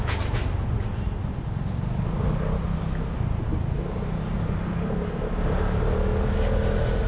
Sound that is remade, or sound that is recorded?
recorded